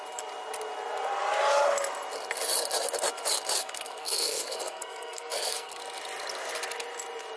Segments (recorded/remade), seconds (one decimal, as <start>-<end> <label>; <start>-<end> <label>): 0.0-3.6 recorded; 3.6-5.8 remade; 5.8-7.4 recorded